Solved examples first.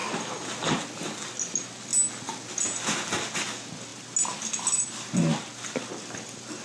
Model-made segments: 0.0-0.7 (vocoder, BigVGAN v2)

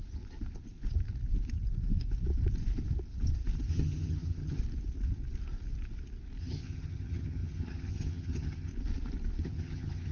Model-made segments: 3.7-4.6 (vocoder, HiFi-GAN); 6.4-8.7; 9.4-10.1

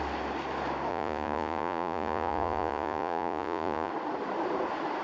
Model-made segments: 0.9-3.9 (vocoder, Vocos)